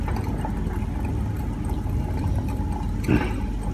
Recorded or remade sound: recorded